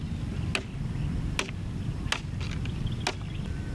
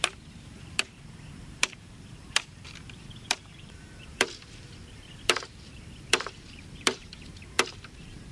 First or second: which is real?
first